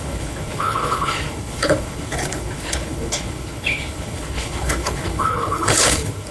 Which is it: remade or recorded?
remade